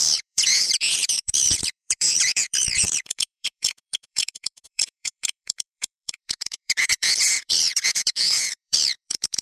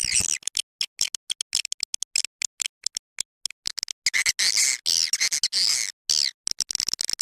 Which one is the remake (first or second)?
first